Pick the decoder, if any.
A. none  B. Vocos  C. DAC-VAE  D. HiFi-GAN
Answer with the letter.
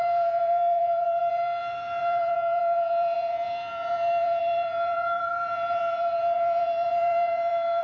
B